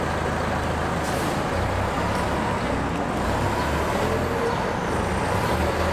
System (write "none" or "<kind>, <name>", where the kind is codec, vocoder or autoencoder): none